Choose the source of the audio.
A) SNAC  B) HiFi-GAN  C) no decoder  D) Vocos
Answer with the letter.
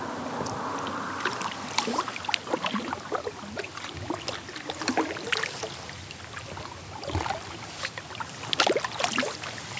C